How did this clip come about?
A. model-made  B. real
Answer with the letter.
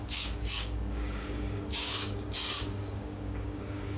A